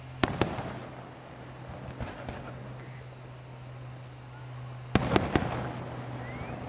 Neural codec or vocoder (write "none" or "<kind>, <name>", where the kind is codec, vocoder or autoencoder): none